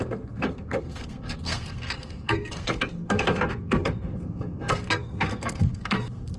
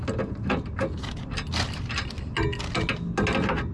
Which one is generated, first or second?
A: first